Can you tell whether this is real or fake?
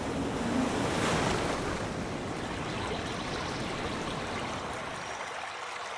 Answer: real